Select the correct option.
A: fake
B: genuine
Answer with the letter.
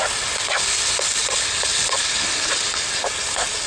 B